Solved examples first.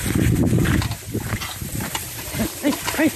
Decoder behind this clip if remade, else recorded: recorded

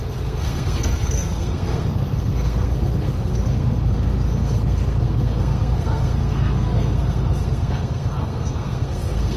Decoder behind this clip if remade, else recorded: remade, codec, SNAC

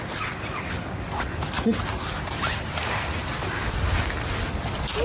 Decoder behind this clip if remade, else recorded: recorded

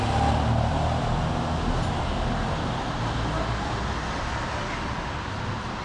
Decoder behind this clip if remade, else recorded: recorded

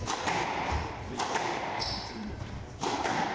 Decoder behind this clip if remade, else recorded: recorded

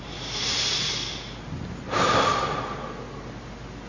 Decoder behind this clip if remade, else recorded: recorded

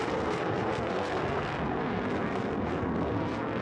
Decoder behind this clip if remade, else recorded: remade, codec, SNAC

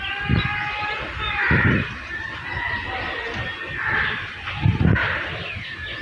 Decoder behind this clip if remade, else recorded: recorded